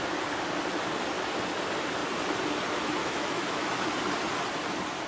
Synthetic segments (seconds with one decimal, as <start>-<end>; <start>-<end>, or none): 3.0-3.7